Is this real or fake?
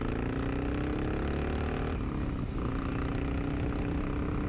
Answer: real